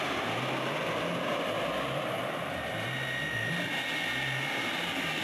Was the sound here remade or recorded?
recorded